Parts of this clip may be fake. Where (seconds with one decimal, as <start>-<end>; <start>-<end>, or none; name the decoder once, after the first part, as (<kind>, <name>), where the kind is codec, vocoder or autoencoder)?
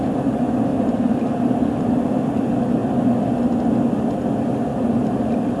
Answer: 0.7-1.8 (vocoder, BigVGAN v2); 4.7-5.6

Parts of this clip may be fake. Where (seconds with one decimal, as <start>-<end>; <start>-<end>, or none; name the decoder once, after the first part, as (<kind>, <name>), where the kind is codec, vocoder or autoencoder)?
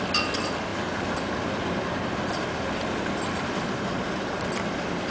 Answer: none